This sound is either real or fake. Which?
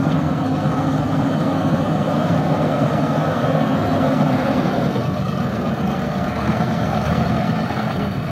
fake